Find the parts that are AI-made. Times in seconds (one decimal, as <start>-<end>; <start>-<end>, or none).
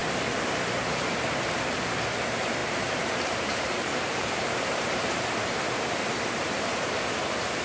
0.9-7.6